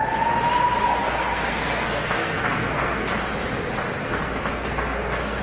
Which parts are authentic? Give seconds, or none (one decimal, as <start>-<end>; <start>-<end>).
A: 0.0-1.0; 3.1-4.0